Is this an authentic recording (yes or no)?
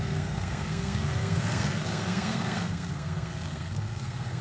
no